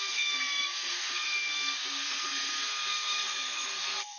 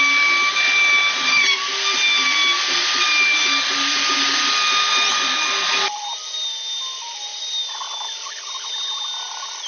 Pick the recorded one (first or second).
second